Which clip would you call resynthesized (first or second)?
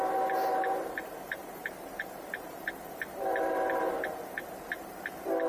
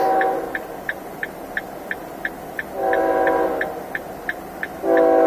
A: first